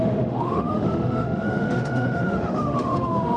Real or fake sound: fake